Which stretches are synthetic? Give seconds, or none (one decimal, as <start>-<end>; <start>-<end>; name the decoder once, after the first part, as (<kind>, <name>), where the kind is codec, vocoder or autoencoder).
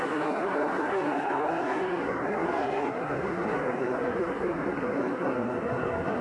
0.0-6.2 (codec, SNAC)